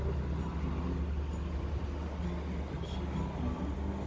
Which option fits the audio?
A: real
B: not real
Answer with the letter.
A